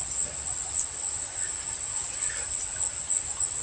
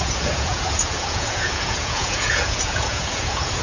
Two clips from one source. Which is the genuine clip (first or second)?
first